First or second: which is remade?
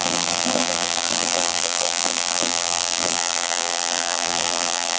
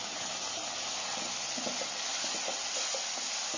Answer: first